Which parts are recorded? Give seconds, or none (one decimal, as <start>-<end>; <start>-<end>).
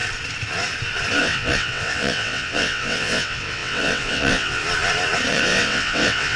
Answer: 0.0-1.2; 4.6-5.3